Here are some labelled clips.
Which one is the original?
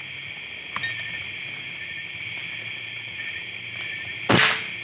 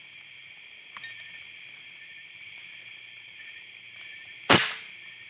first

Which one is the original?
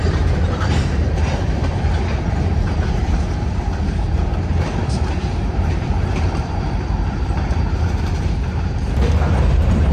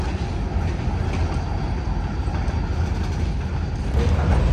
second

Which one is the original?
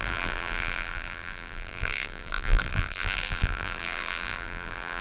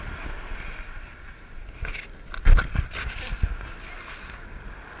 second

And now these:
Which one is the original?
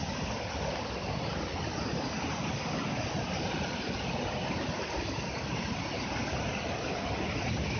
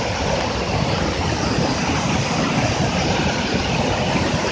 first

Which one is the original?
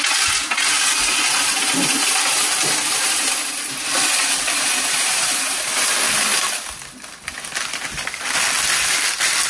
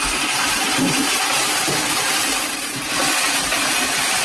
first